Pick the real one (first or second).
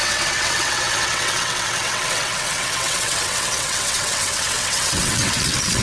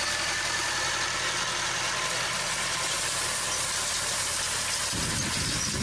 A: second